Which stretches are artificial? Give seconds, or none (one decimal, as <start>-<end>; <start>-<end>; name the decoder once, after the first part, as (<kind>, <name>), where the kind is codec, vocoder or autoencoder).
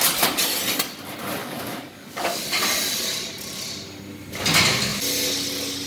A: 1.4-2.4 (codec, DAC)